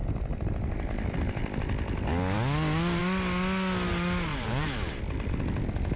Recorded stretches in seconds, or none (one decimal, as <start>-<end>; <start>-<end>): 0.9-4.3; 5.0-6.0